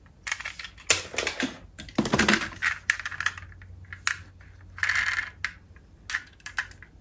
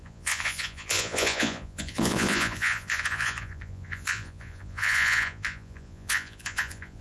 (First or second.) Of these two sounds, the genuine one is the first